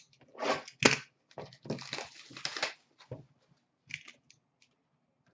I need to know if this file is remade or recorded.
recorded